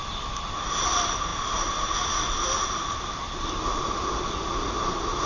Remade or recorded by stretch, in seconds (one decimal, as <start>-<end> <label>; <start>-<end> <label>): 0.0-5.3 recorded